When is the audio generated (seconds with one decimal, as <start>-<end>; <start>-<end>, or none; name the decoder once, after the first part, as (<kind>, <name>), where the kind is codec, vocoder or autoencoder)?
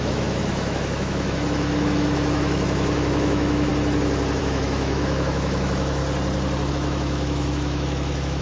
0.0-3.7 (autoencoder, DAC-VAE); 4.4-6.0; 6.7-8.4